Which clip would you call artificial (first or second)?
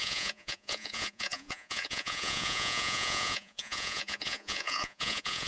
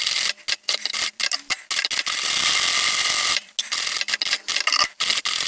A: first